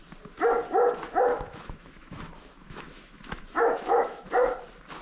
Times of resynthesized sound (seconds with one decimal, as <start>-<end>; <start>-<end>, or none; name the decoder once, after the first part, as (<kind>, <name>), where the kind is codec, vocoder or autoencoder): 1.3-4.3 (autoencoder, DAC-VAE)